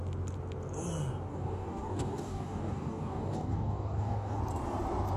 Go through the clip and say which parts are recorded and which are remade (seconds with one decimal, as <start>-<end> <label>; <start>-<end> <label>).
0.0-1.3 recorded; 1.3-4.4 remade; 4.4-5.2 recorded